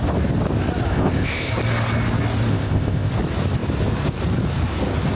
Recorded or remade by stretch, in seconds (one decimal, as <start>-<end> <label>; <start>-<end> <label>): 0.0-0.9 recorded; 0.9-1.5 remade; 1.5-2.5 recorded; 2.5-3.1 remade; 3.1-5.2 recorded

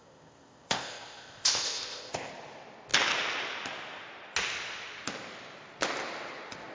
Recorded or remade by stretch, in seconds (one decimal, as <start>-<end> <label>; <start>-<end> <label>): 0.0-2.3 remade; 2.3-6.7 recorded